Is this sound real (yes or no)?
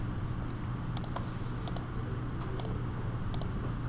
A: yes